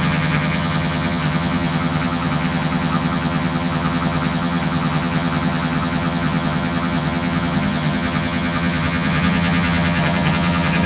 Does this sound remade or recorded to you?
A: remade